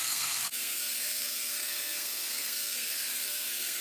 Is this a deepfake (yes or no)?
yes